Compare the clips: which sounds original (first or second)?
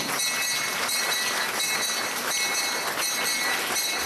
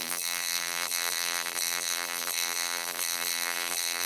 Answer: first